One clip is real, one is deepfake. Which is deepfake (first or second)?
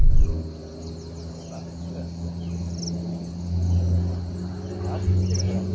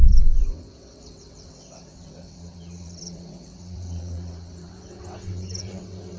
second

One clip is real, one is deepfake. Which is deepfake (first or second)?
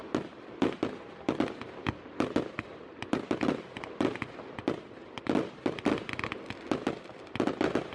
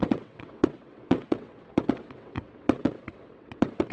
second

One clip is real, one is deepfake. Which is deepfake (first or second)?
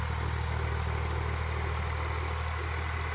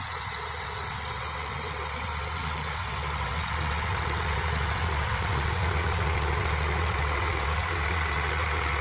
second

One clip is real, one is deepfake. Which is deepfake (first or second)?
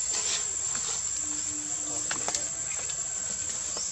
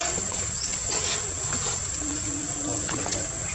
second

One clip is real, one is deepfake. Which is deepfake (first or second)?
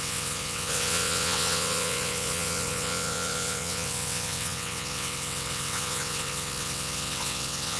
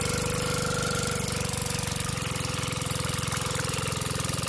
first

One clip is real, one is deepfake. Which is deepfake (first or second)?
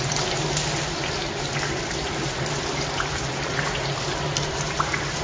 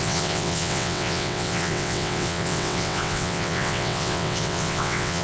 second